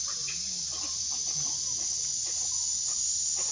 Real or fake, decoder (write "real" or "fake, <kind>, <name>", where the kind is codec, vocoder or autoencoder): real